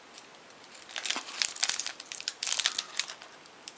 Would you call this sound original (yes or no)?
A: no